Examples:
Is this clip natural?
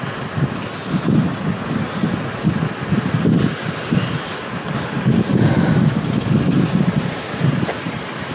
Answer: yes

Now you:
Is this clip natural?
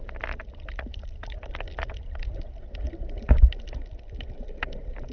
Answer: yes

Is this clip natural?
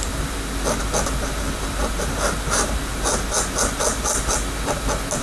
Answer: yes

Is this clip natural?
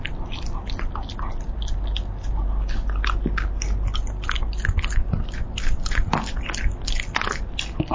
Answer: yes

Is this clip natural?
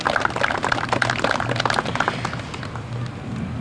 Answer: yes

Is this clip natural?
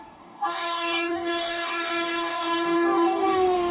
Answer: no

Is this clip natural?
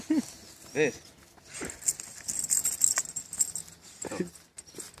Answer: yes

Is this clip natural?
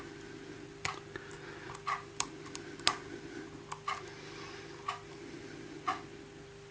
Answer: yes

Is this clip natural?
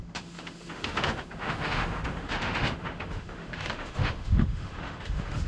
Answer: no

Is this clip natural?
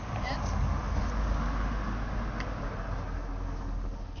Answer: yes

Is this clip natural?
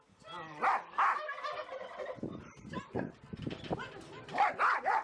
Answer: yes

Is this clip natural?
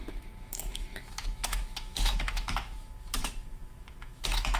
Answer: no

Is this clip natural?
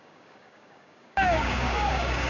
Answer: no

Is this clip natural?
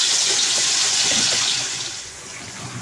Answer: no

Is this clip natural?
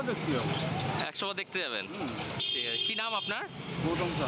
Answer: yes